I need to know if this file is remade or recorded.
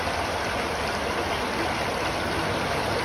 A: recorded